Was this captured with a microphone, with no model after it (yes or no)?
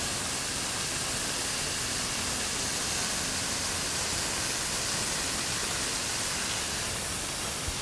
yes